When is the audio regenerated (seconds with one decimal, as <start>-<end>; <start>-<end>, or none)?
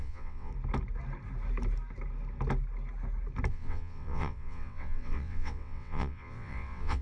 0.0-0.5; 3.5-7.0